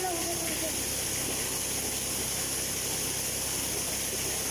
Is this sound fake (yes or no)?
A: no